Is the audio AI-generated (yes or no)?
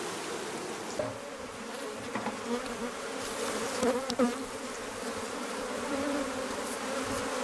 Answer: yes